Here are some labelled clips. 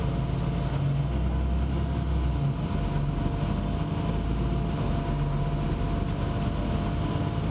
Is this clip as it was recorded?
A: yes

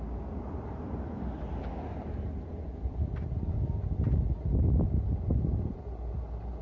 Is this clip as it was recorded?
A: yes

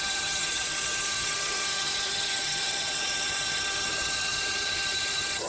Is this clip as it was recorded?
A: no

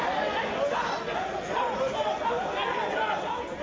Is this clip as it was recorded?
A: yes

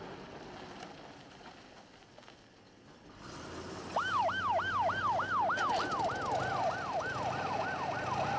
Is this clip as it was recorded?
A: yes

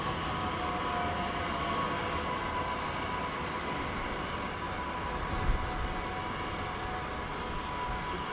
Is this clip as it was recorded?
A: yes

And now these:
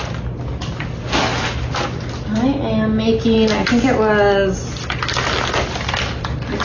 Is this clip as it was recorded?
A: yes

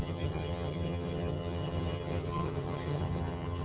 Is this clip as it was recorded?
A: no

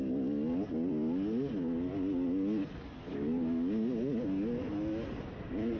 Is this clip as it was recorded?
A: yes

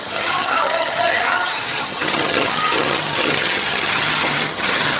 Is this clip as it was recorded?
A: no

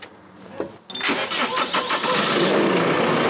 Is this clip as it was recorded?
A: yes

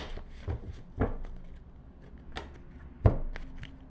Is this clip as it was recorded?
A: yes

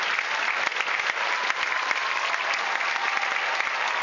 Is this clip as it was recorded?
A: yes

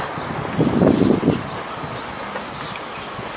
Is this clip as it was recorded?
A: yes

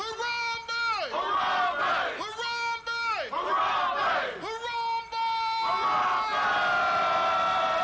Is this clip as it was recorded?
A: yes